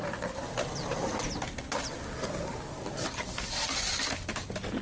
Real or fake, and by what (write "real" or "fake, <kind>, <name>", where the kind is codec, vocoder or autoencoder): real